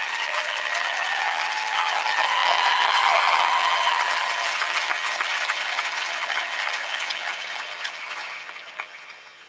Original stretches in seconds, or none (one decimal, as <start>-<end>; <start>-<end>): none